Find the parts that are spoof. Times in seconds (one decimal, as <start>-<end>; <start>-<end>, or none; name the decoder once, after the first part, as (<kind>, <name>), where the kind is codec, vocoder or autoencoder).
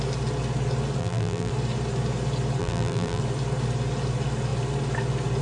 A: 1.0-1.5 (vocoder, BigVGAN v2); 2.6-3.2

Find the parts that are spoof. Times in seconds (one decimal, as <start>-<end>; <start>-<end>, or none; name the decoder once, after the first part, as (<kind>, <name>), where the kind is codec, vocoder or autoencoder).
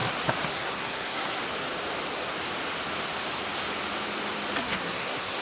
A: 0.5-1.4 (codec, SNAC); 4.6-5.4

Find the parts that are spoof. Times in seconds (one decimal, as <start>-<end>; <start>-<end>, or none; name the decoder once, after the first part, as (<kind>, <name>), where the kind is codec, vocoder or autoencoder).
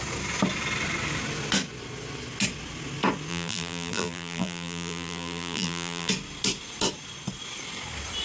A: 3.3-6.1 (vocoder, BigVGAN v2)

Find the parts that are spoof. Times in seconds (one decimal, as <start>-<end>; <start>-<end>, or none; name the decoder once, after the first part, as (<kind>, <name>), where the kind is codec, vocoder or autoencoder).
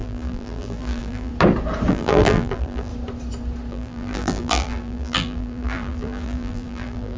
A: 0.0-1.3 (vocoder, BigVGAN v2); 1.9-2.9; 3.7-7.2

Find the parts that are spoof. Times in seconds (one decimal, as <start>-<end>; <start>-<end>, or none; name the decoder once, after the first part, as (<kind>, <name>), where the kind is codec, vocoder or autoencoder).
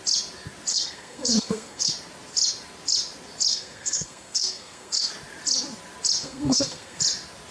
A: 0.7-1.9 (codec, SNAC); 3.5-5.1; 6.2-7.0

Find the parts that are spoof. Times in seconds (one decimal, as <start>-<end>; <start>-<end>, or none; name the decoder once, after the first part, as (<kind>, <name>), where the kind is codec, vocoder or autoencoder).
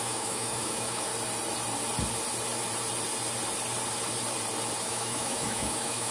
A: 0.0-1.1 (autoencoder, DAC-VAE); 4.8-6.1